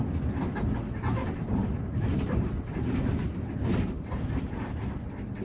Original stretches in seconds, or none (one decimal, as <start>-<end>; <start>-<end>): 0.0-1.2; 4.4-5.4